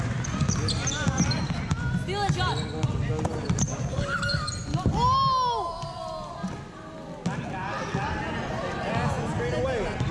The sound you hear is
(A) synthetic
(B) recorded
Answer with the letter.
B